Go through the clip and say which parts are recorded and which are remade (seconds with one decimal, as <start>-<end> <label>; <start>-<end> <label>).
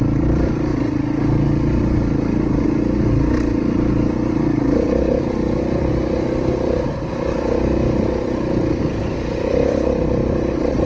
0.0-0.7 remade; 0.7-3.6 recorded; 3.6-10.9 remade